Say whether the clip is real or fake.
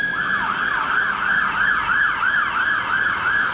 real